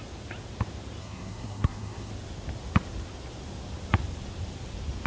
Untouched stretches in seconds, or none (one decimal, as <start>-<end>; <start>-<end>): 0.0-1.0; 2.1-5.1